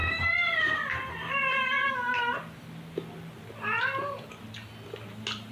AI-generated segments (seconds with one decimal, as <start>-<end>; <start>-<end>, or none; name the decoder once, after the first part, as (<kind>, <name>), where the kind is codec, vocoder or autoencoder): 0.0-0.9 (vocoder, BigVGAN v2)